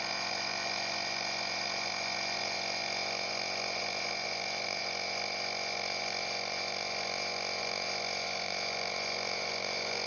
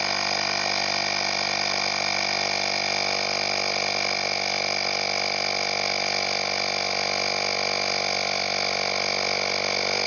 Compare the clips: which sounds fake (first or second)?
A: first